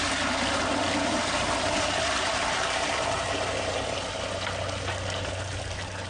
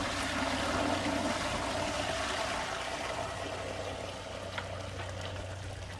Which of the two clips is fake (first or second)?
first